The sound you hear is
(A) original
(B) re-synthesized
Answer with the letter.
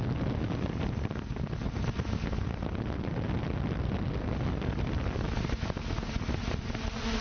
A